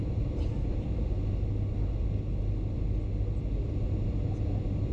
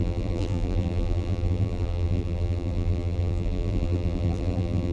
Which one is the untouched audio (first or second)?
first